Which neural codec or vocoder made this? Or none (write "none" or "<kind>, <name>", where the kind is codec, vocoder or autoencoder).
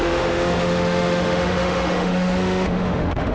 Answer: autoencoder, DAC-VAE